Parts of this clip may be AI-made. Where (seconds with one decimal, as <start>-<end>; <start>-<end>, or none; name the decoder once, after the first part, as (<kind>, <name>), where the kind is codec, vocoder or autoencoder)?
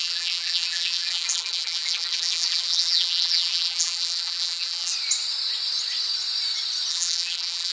0.0-4.9 (vocoder, BigVGAN v2); 6.9-7.7